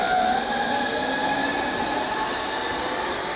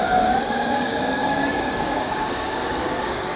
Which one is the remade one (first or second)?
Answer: second